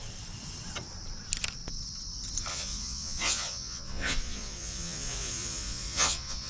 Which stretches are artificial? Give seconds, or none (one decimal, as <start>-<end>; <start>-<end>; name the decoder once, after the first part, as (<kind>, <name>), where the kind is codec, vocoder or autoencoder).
2.5-6.5 (vocoder, Vocos)